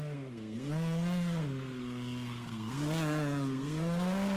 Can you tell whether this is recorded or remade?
remade